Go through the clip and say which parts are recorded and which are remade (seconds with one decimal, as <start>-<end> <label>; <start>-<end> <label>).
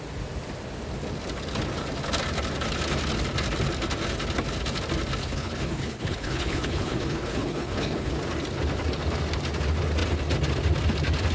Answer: 0.0-5.2 recorded; 5.2-8.1 remade; 8.1-11.3 recorded